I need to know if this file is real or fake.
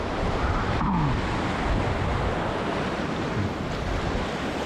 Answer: real